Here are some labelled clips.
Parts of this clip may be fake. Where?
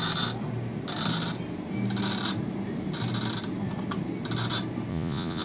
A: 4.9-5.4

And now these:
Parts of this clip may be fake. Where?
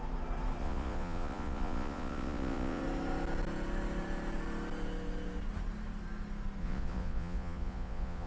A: 0.6-2.8; 6.6-8.3